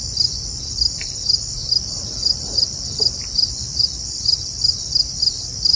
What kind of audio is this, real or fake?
real